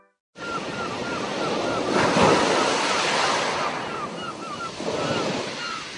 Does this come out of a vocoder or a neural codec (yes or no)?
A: no